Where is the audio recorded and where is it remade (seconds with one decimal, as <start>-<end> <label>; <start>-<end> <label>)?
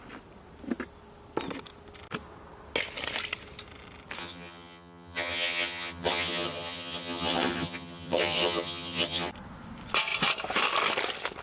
0.0-4.2 recorded; 4.2-9.3 remade; 9.3-11.4 recorded